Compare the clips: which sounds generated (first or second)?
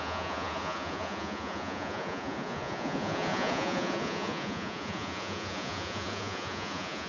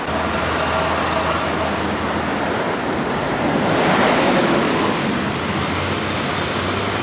first